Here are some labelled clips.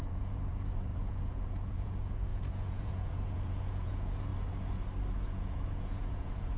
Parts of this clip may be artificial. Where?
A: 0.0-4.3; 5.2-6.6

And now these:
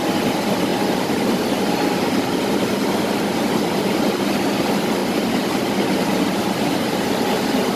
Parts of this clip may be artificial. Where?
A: 0.7-1.4

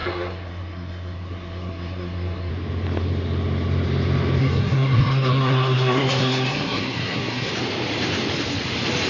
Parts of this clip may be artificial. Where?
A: 0.0-2.5; 4.4-7.5

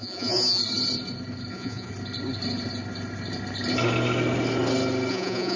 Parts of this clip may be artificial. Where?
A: 0.0-0.6; 1.5-1.9; 5.1-5.6

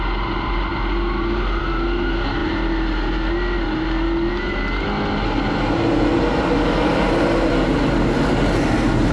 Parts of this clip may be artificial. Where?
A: none

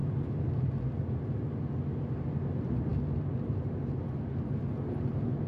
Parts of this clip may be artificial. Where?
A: 0.0-0.7

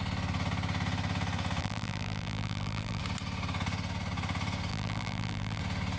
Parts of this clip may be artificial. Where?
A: 1.6-3.0; 4.7-5.6